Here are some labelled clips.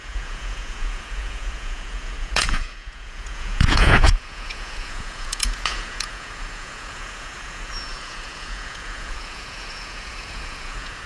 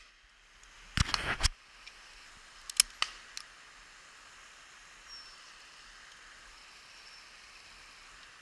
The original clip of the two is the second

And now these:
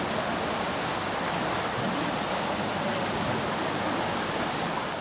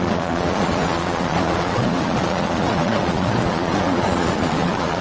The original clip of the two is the first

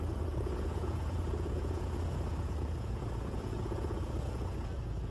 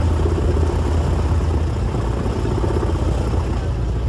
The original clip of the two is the second